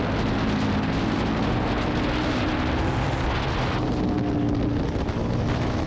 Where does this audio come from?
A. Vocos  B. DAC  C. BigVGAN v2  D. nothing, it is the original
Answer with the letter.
D